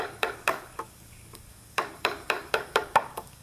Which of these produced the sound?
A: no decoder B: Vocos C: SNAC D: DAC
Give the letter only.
D